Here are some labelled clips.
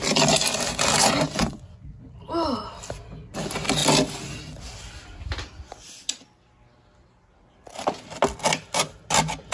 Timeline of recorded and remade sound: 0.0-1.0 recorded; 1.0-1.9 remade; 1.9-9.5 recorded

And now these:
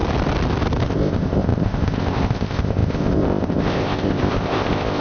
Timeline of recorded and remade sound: 0.0-0.9 recorded; 0.9-5.0 remade

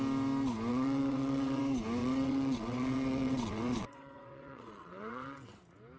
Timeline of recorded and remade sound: 0.0-0.7 recorded; 0.7-1.6 remade; 1.6-2.0 recorded; 2.0-5.6 remade; 5.6-6.0 recorded

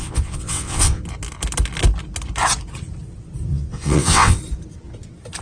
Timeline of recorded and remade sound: 0.0-1.0 remade; 1.0-3.5 recorded; 3.5-4.4 remade; 4.4-5.4 recorded